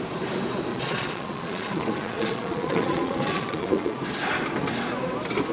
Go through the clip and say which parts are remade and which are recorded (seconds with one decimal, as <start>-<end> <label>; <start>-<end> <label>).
0.0-0.7 recorded; 0.7-4.0 remade; 4.0-5.5 recorded